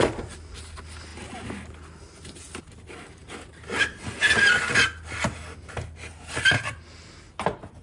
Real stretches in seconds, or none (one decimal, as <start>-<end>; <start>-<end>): 0.0-7.8